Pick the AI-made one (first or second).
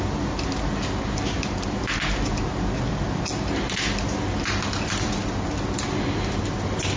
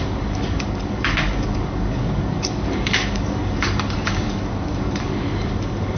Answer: second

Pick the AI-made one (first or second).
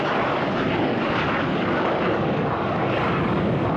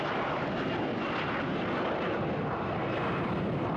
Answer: first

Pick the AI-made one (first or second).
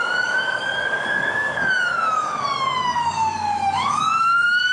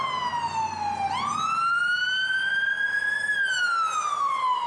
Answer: first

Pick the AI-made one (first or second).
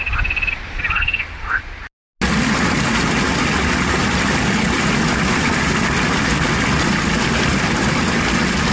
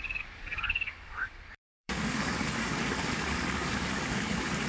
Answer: second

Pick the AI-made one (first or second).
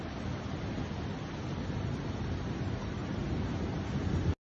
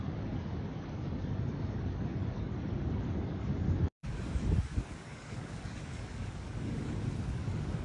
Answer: second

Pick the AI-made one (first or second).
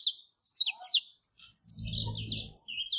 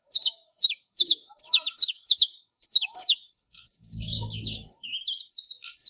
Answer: second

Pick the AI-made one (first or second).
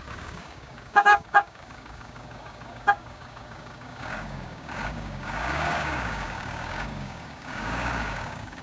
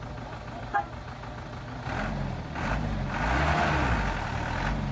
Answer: first